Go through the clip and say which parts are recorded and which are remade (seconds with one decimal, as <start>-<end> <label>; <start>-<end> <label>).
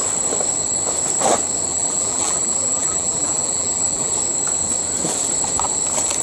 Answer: 0.0-1.7 recorded; 1.7-4.1 remade; 4.1-6.2 recorded